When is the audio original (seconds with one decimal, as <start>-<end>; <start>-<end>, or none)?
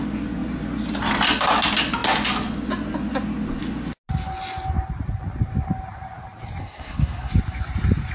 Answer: 0.0-6.6; 7.3-8.1